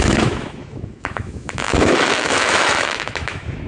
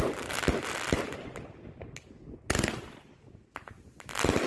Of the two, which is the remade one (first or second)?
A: first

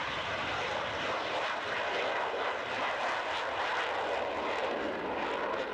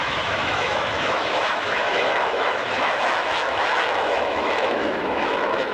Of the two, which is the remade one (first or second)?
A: second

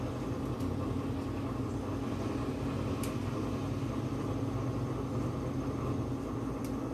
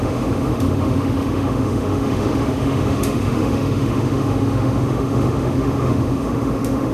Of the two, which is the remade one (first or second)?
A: second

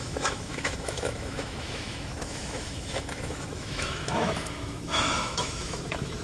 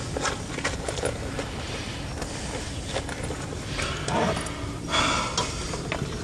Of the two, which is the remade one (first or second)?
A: first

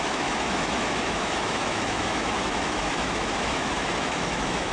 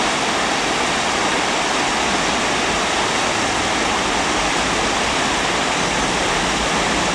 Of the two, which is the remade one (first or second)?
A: first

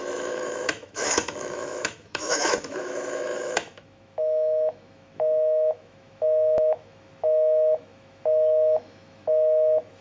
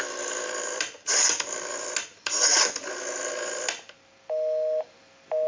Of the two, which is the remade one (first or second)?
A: first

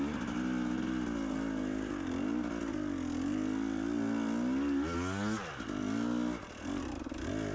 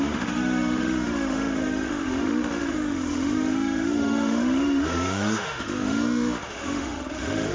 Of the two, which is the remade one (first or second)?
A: second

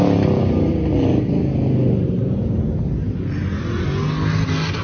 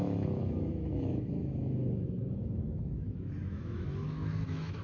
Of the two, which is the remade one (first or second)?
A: second